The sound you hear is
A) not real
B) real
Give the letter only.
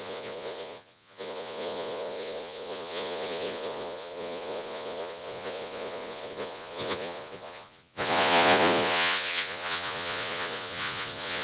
A